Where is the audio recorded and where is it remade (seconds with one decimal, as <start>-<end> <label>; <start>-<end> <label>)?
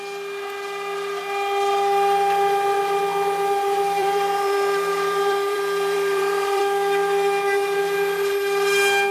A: 0.0-4.0 recorded; 4.0-6.6 remade; 6.6-9.1 recorded